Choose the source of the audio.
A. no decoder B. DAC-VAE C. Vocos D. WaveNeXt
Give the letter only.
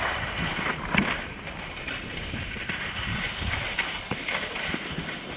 A